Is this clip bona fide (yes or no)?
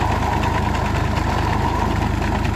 yes